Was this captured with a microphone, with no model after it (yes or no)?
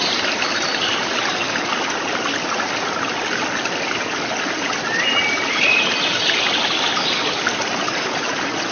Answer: yes